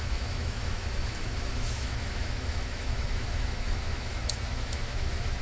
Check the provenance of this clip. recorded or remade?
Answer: remade